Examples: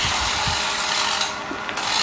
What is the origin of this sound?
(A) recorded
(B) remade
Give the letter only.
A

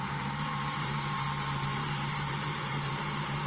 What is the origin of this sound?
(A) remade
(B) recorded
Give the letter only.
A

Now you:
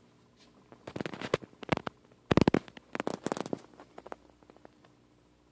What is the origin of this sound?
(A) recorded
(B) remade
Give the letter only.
A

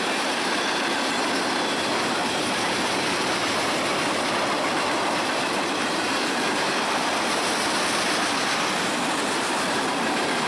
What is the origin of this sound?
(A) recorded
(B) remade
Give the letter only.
B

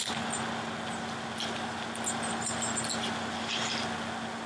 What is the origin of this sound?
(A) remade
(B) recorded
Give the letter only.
B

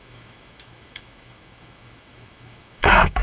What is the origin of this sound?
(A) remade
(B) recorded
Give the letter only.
A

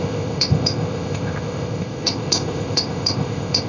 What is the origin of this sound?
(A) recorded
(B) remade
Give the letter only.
B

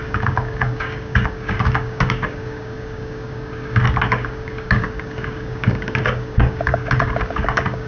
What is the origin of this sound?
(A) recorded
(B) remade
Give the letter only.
B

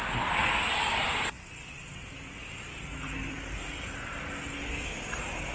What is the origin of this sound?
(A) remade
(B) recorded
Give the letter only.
B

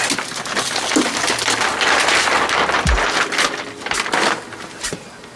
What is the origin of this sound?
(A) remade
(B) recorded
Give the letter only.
B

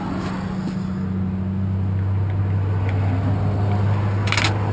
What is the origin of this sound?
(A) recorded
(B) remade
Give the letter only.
A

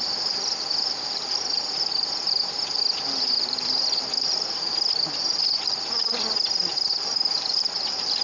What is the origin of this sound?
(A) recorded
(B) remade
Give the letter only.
A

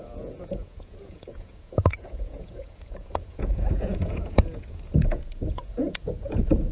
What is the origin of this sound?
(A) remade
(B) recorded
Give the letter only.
A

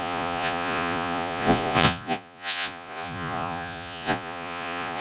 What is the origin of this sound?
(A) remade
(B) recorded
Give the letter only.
A